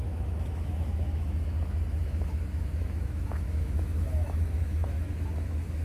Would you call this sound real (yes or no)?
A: no